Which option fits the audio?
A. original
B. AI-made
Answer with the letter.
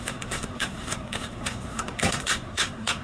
B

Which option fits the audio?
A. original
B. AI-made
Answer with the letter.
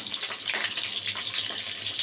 A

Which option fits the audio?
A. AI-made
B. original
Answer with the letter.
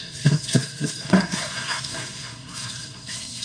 A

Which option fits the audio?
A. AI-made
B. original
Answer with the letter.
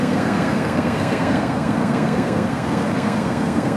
A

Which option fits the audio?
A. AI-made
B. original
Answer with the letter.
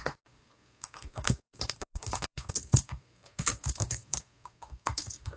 A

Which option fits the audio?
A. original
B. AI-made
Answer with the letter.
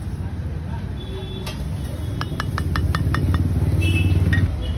A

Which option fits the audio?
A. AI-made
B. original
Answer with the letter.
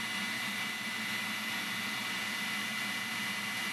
B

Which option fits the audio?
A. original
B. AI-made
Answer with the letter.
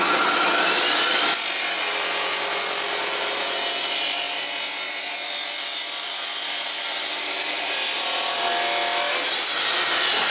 A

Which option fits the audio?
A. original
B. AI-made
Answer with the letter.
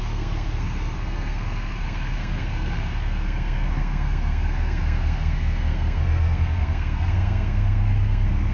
B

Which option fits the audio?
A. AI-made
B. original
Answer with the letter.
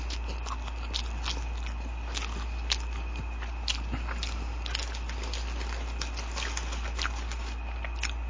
B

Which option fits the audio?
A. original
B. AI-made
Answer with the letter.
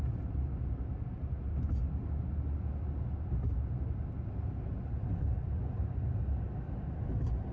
A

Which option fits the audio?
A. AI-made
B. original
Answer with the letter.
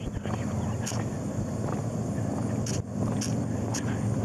B